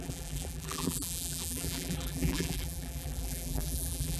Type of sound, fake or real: fake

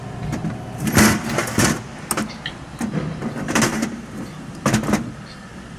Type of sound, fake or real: real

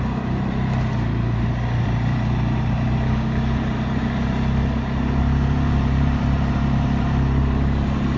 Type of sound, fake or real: fake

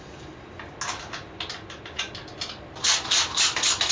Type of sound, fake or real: real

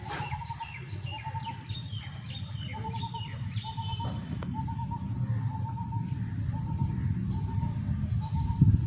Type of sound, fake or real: fake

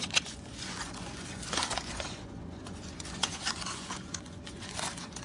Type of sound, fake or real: fake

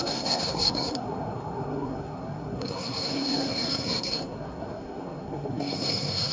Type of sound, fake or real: fake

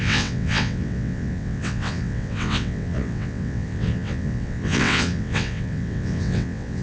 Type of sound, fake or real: fake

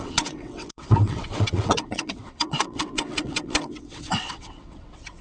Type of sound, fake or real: fake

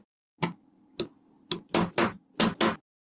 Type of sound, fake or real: real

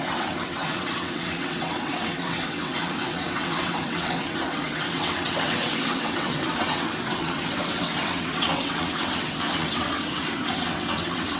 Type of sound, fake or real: fake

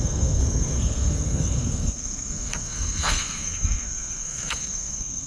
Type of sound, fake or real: fake